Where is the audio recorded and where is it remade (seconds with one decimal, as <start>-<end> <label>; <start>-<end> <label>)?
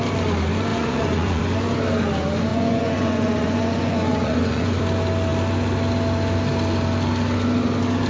0.0-0.7 recorded; 0.7-1.4 remade; 1.4-2.5 recorded; 2.5-4.8 remade; 4.8-8.1 recorded